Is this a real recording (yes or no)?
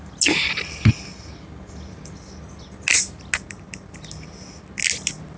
yes